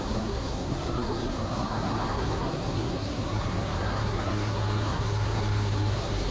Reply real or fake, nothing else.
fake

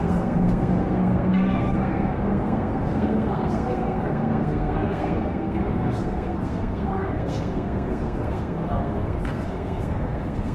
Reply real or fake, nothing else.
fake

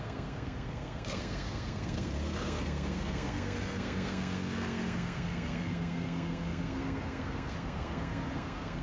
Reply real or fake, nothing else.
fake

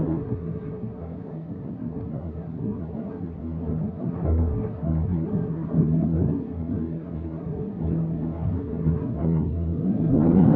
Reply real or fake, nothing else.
fake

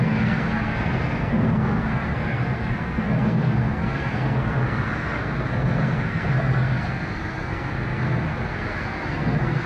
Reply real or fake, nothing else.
fake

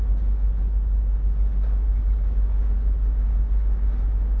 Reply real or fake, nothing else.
real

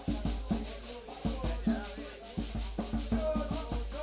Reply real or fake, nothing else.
real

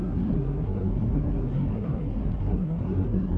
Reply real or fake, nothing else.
fake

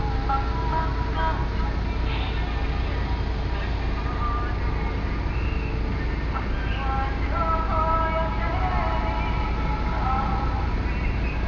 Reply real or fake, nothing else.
real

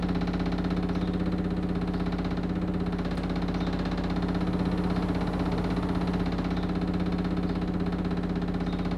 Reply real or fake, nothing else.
real